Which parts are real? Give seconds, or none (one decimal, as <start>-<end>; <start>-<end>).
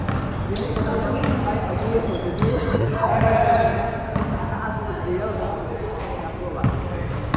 0.0-2.5; 3.1-7.4